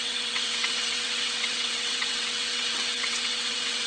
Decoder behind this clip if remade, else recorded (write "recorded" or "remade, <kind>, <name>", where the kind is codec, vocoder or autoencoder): remade, vocoder, WaveNeXt